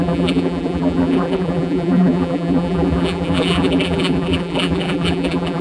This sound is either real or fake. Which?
fake